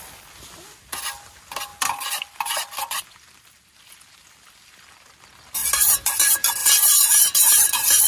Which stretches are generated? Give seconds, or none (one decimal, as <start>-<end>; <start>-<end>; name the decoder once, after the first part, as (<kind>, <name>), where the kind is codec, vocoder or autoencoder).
none